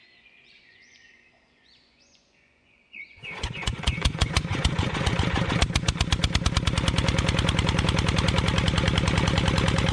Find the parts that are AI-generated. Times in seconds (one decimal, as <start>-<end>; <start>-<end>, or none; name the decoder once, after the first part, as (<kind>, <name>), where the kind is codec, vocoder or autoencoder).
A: 0.0-5.1 (vocoder, Vocos)